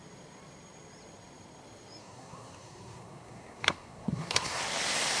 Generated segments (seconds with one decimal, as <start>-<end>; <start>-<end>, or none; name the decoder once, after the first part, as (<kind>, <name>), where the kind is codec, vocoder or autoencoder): 2.0-4.6 (codec, SNAC)